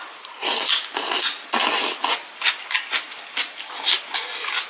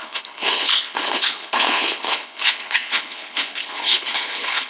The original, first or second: first